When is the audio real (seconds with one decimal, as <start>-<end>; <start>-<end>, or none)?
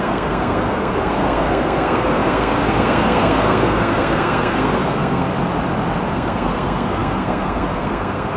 5.3-6.1